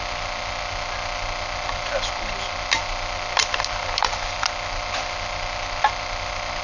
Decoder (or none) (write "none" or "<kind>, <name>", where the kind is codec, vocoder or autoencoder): none